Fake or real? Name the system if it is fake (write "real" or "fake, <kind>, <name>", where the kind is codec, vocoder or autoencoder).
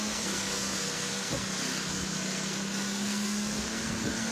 fake, codec, SNAC